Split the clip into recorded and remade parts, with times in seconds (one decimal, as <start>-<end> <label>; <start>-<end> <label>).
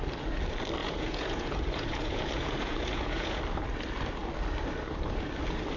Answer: 0.0-0.8 recorded; 0.8-3.4 remade; 3.4-5.8 recorded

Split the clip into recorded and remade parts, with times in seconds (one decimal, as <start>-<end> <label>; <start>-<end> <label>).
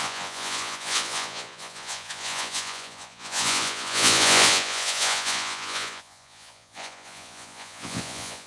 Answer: 0.0-8.5 remade